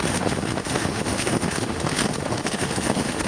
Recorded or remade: remade